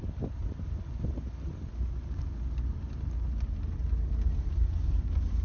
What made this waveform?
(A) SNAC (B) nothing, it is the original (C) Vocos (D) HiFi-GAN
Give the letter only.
B